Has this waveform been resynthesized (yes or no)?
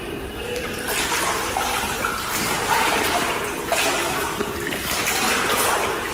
yes